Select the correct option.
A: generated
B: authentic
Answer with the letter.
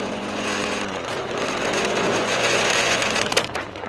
A